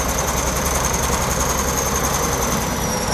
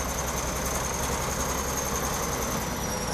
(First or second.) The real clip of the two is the second